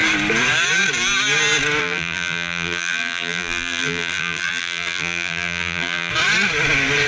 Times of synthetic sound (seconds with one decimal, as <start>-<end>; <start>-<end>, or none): 1.8-6.1